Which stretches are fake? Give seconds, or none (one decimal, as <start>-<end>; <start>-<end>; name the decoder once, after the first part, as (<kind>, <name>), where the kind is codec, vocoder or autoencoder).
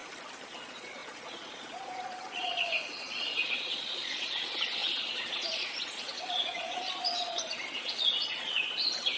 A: 0.6-9.2 (vocoder, Vocos)